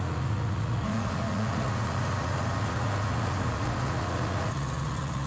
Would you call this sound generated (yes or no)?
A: yes